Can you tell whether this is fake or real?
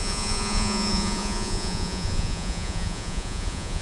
fake